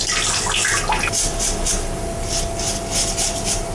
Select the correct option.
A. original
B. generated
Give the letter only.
A